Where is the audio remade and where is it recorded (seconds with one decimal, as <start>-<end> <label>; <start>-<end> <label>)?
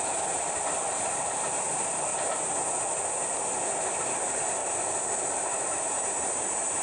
0.0-2.1 remade; 2.1-3.8 recorded; 3.8-4.6 remade; 4.6-5.8 recorded; 5.8-6.8 remade